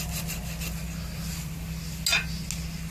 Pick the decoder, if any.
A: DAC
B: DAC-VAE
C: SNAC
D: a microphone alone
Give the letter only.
D